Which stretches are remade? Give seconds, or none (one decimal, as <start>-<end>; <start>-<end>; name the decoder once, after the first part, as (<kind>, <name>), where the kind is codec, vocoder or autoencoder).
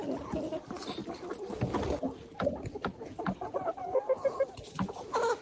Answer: none